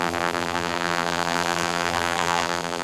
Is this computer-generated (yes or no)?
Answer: yes